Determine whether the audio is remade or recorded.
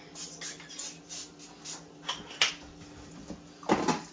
recorded